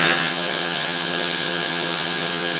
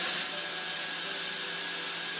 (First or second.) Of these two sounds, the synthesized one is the first